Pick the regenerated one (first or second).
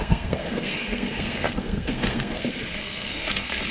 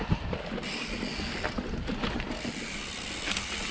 first